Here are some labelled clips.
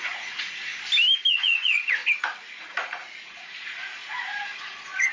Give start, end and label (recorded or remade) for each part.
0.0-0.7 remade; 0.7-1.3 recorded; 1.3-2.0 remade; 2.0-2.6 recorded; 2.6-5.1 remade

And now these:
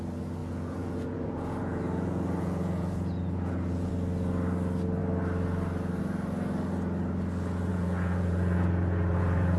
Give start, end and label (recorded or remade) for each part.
0.0-0.4 recorded; 0.4-3.9 remade; 3.9-7.7 recorded; 7.7-9.6 remade